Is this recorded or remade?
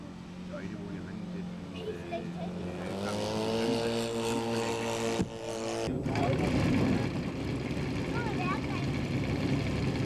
recorded